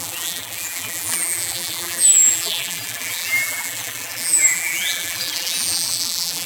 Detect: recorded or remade remade